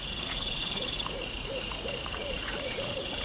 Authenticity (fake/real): fake